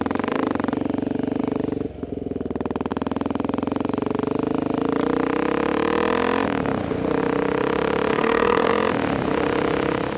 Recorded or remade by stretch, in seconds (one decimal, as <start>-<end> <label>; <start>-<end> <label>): 0.0-8.1 recorded; 8.1-8.7 remade; 8.7-10.2 recorded